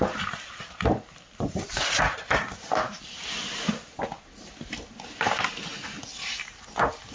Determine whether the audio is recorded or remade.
recorded